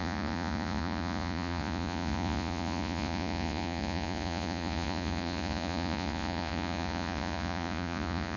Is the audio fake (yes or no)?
yes